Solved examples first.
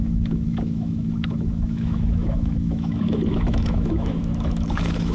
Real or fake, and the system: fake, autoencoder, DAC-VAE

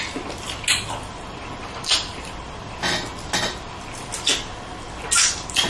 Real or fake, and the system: real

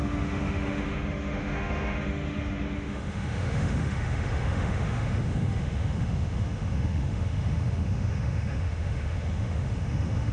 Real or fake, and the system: fake, autoencoder, DAC-VAE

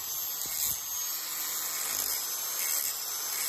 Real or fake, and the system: real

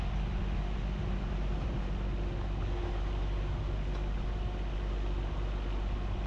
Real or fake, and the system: real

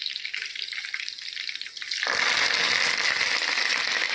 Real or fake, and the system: real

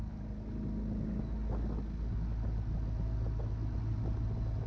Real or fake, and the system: real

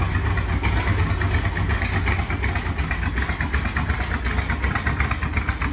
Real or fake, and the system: real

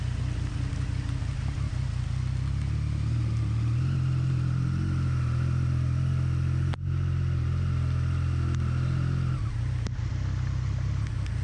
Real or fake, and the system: real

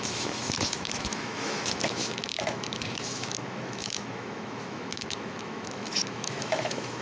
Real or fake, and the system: fake, autoencoder, DAC-VAE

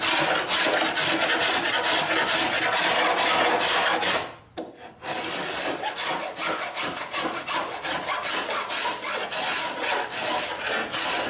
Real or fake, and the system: real